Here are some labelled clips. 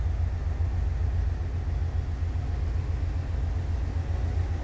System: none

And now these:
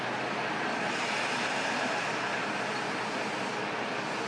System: none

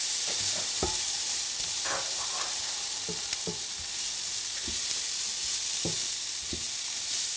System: none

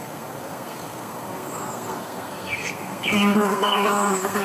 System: codec, SNAC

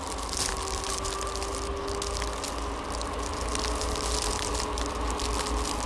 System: none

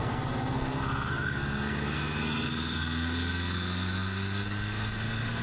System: codec, SNAC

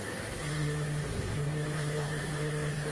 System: codec, SNAC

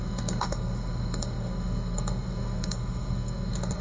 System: codec, SNAC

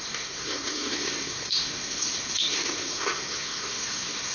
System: codec, SNAC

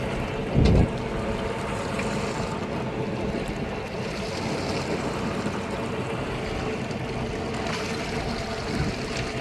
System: none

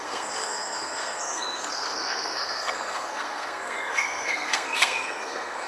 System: codec, SNAC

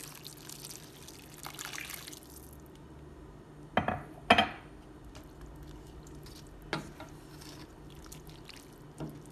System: none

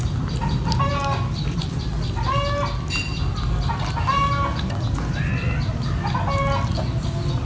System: none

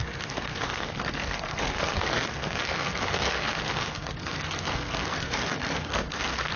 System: codec, SNAC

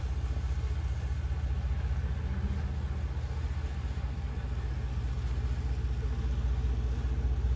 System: none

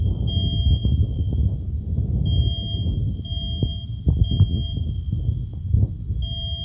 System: none